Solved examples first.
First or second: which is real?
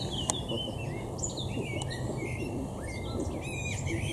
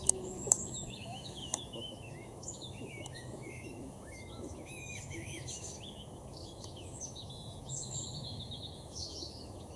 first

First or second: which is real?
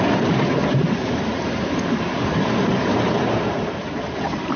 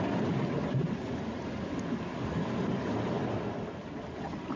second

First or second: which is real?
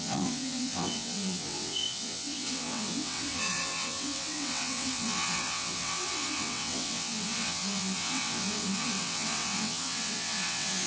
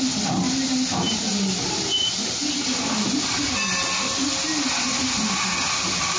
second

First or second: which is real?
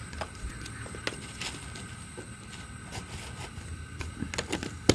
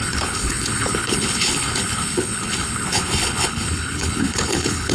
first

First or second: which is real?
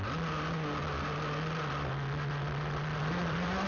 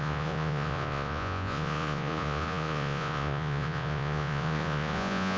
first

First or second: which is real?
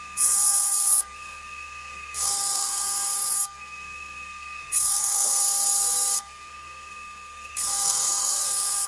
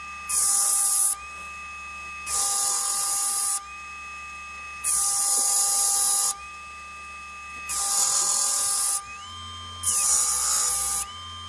second